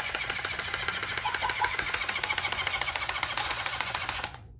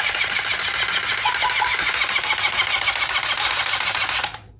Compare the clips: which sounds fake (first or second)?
first